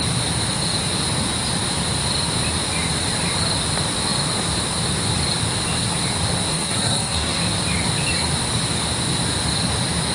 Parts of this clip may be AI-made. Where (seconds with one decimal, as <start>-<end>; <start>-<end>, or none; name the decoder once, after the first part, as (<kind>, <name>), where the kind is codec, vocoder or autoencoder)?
6.5-7.4 (codec, SNAC)